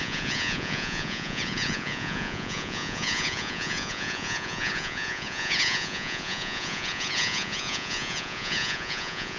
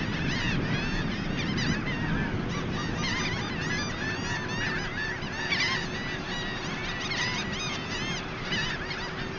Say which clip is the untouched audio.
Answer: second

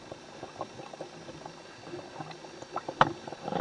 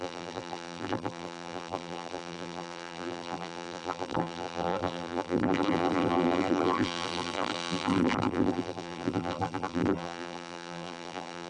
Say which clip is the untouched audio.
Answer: first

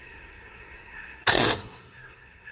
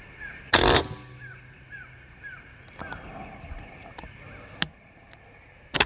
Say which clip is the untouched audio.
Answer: second